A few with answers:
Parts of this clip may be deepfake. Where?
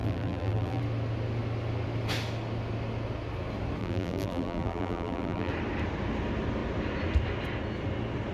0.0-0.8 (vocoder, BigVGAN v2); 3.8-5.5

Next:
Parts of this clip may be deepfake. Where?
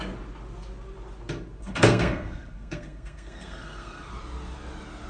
1.6-4.1 (codec, SNAC)